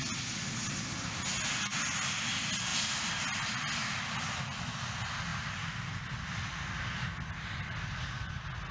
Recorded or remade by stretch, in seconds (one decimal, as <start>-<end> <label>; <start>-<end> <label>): 0.0-8.7 recorded